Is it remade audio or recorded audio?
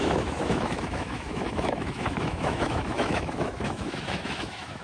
remade